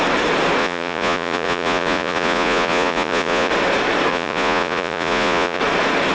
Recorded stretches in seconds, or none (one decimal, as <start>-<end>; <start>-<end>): 0.0-0.6; 3.5-4.1; 5.6-6.1